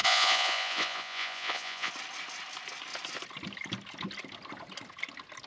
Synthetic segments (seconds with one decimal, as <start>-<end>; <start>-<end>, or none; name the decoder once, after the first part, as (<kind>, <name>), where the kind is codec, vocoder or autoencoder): 0.0-1.9 (vocoder, Vocos)